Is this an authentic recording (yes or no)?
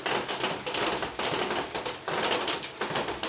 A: yes